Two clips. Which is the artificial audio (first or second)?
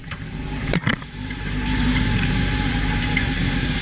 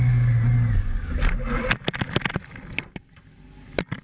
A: first